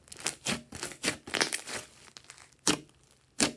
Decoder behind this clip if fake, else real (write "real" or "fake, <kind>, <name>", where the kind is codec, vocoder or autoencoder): real